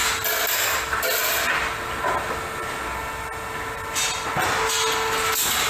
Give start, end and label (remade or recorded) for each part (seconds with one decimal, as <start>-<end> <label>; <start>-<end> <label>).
0.0-5.7 recorded